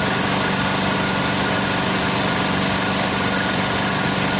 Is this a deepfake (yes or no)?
no